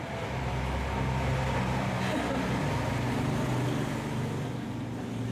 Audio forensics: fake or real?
real